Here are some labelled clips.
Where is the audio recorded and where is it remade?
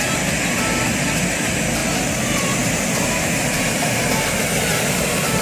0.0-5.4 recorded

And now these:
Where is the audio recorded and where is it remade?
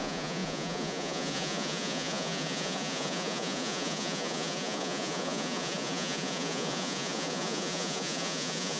0.0-8.8 remade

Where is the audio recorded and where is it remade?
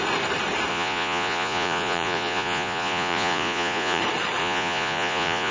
0.0-0.7 recorded; 0.7-4.0 remade; 4.0-4.4 recorded; 4.4-5.5 remade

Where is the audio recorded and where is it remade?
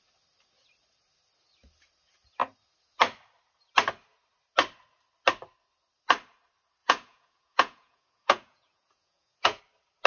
0.0-6.8 recorded; 6.8-9.6 remade; 9.6-10.1 recorded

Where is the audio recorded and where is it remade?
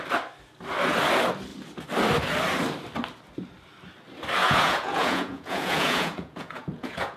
0.0-4.4 recorded; 4.4-7.2 remade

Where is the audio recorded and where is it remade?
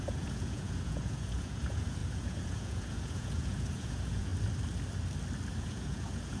0.0-4.3 remade; 4.3-5.6 recorded; 5.6-6.4 remade